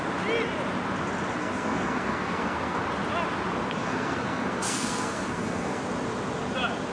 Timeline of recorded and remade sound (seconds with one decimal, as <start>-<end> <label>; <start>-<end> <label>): 0.0-1.4 recorded; 1.4-2.8 remade; 2.8-3.8 recorded; 3.8-5.8 remade; 5.8-6.9 recorded